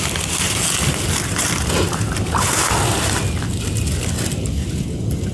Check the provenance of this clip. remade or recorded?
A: recorded